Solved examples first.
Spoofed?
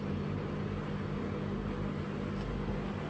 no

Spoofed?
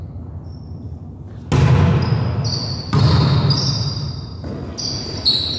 no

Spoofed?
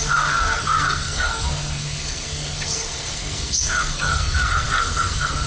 yes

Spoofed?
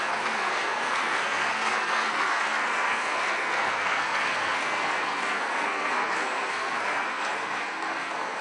yes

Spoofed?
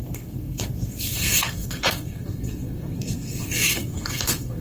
yes